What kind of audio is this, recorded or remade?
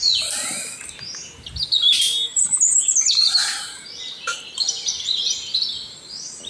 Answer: recorded